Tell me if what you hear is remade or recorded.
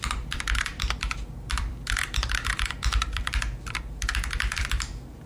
remade